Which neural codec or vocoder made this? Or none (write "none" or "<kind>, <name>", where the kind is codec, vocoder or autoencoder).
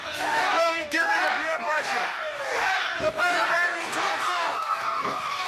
codec, DAC